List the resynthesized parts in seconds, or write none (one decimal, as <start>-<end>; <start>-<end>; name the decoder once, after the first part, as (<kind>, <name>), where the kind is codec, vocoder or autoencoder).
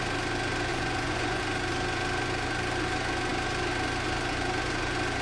0.7-1.4 (vocoder, Vocos)